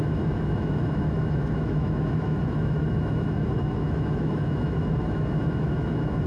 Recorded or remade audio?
remade